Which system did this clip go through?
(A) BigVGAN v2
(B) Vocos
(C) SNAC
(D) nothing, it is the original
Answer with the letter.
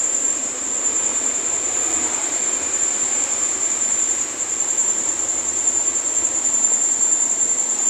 A